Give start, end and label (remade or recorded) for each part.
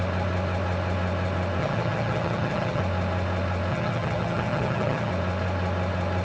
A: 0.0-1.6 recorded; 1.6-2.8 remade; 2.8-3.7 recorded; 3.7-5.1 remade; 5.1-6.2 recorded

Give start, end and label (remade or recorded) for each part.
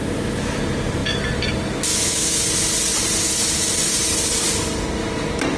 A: 0.0-0.6 remade; 0.6-1.9 recorded; 1.9-2.5 remade; 2.5-5.6 recorded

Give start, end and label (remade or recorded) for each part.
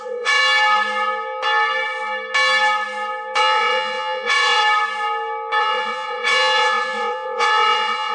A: 0.0-0.4 remade; 0.4-3.4 recorded; 3.4-4.6 remade; 4.6-5.6 recorded; 5.6-8.1 remade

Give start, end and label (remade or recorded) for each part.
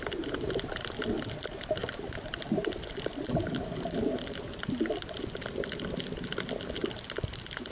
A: 0.0-7.7 recorded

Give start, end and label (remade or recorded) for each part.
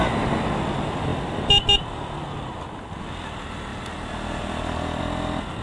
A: 0.0-5.6 recorded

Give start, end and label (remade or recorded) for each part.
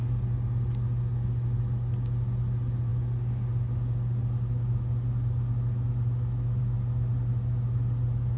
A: 0.0-8.4 recorded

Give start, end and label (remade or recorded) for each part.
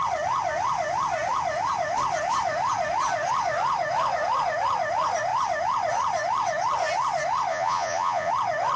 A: 0.0-7.5 recorded; 7.5-8.3 remade; 8.3-8.8 recorded